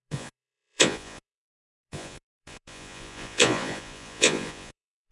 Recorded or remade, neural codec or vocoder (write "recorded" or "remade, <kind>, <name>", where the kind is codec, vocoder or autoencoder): remade, vocoder, Vocos